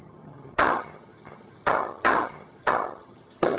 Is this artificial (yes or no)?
yes